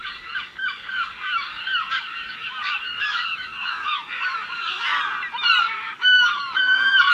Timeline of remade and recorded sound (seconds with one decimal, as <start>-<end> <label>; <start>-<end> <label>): 0.0-4.9 remade; 4.9-5.6 recorded; 5.6-7.1 remade